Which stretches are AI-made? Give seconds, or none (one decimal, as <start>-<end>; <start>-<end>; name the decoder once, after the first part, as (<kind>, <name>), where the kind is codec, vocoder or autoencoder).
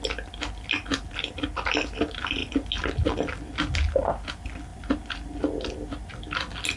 none